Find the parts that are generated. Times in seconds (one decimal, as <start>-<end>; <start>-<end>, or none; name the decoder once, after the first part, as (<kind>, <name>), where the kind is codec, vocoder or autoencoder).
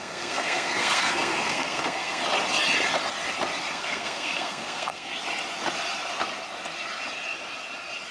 0.0-2.2 (codec, SNAC); 3.7-5.1